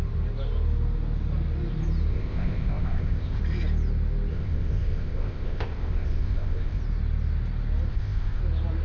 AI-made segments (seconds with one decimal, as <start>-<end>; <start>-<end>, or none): 2.1-3.4; 4.3-6.8; 7.9-8.4